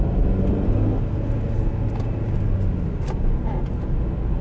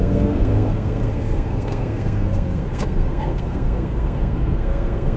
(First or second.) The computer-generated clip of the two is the second